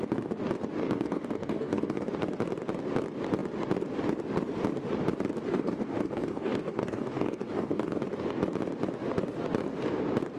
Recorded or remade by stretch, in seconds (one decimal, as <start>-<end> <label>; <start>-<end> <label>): 0.0-0.8 recorded; 0.8-2.1 remade; 2.1-5.5 recorded; 5.5-8.0 remade; 8.0-10.4 recorded